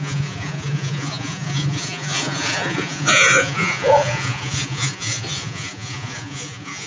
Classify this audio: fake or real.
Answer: fake